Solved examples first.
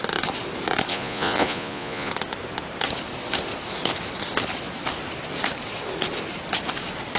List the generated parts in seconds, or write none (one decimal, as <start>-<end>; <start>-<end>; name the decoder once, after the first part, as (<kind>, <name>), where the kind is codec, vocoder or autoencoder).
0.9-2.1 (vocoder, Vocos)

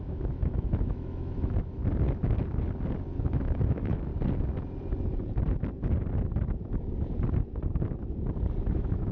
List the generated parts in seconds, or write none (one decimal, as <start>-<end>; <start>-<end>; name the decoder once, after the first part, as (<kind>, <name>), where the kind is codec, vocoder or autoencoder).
0.0-1.8 (autoencoder, DAC-VAE); 3.2-4.1; 8.6-9.1

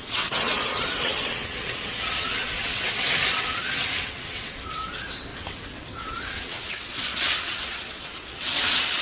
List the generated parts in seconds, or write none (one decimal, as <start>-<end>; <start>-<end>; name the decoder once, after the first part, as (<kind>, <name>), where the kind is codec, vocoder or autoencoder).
0.0-9.0 (vocoder, WaveNeXt)

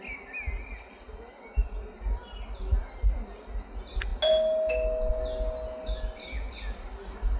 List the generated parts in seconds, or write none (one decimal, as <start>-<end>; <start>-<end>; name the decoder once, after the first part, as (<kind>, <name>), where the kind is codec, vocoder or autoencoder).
none

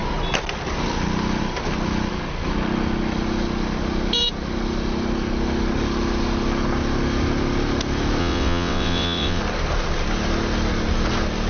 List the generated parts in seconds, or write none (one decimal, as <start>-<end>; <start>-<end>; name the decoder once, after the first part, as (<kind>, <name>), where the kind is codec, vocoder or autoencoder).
8.2-9.4 (vocoder, WaveNeXt)

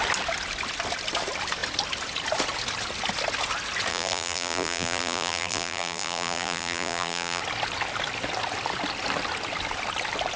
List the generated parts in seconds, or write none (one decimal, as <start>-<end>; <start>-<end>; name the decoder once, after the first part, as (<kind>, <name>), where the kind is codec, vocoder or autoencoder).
3.9-7.4 (vocoder, BigVGAN v2)